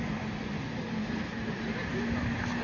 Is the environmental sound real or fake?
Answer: fake